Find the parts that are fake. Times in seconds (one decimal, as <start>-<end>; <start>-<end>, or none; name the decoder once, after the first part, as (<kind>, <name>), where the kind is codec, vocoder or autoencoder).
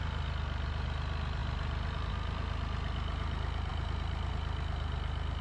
none